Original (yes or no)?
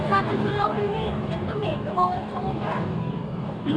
no